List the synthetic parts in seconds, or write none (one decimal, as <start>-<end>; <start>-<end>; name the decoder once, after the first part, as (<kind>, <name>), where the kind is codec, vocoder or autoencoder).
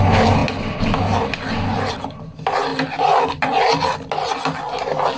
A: none